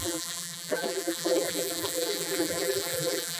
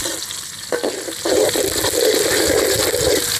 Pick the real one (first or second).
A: second